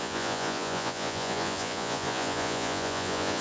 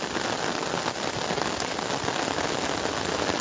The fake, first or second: first